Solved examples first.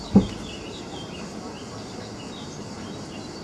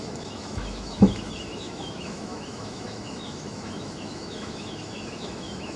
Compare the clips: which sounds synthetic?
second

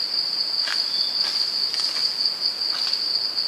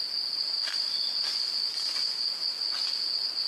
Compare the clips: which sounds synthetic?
second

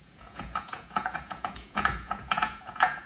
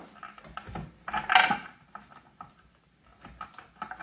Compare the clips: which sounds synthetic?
first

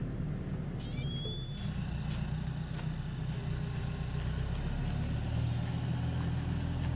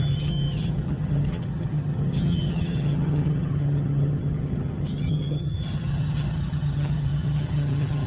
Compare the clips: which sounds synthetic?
second